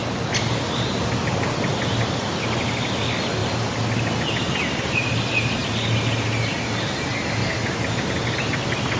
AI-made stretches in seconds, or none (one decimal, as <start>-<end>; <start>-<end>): none